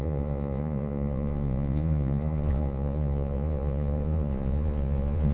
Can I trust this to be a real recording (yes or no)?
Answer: no